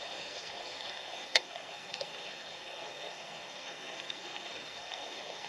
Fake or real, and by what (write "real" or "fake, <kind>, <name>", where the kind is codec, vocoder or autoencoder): fake, codec, SNAC